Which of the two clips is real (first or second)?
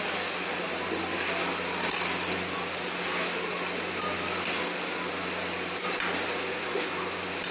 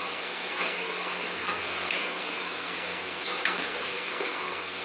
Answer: first